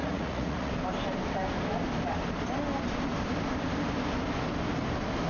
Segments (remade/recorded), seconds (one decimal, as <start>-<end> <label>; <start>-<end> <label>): 0.0-0.7 remade; 0.7-5.3 recorded